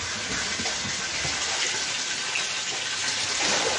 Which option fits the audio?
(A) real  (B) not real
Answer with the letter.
A